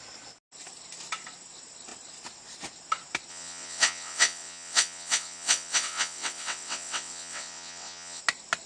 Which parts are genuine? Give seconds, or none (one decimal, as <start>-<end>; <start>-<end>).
0.0-3.3; 8.2-8.7